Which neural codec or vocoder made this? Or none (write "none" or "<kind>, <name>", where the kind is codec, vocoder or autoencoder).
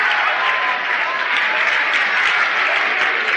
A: none